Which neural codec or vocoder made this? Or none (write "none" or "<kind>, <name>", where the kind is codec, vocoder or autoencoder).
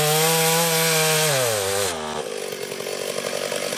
none